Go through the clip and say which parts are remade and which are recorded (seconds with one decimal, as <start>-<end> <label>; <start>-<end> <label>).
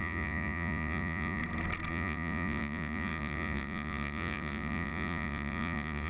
0.0-1.4 remade; 1.4-1.9 recorded; 1.9-6.1 remade